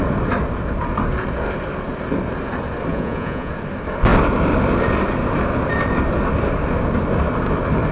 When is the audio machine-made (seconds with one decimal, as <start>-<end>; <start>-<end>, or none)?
2.9-3.5